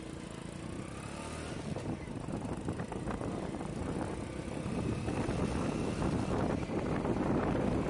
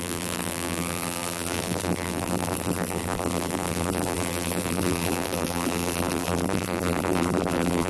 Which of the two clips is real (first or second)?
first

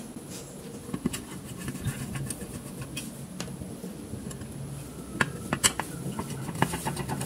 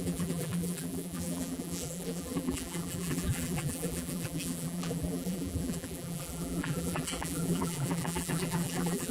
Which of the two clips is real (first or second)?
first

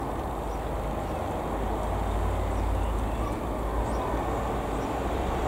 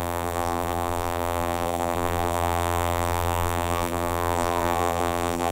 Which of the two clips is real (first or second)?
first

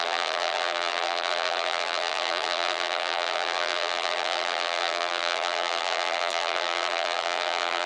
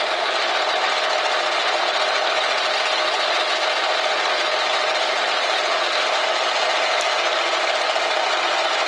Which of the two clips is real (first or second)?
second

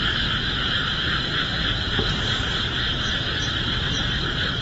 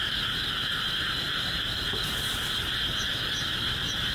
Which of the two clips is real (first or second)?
second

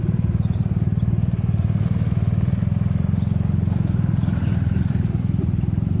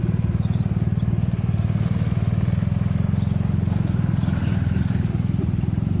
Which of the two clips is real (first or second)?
second